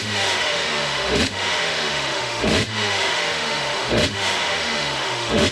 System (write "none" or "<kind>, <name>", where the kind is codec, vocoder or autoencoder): autoencoder, DAC-VAE